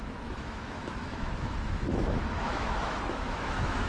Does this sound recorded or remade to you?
remade